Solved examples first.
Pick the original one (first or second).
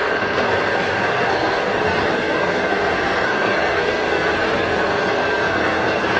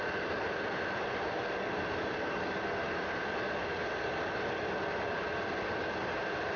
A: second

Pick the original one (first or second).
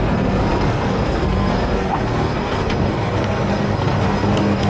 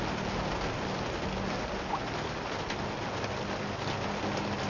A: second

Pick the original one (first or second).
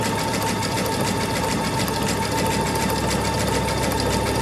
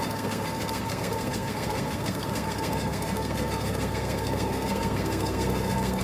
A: first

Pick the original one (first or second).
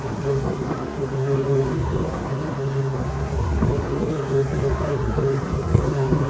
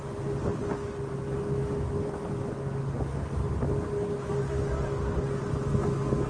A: second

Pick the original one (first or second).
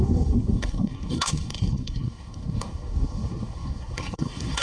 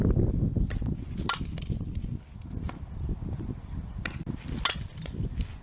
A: second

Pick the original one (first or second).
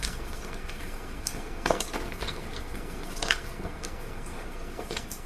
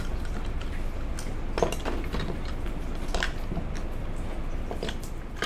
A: second